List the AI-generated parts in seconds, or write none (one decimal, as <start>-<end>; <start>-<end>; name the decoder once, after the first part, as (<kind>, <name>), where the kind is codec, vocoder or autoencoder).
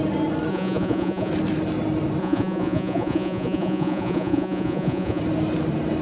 0.5-1.3 (vocoder, Vocos); 2.2-5.2